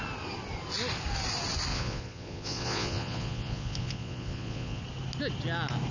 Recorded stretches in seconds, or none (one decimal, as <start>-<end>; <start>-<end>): 0.0-1.7; 4.8-5.9